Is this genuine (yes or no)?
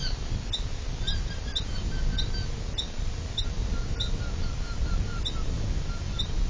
yes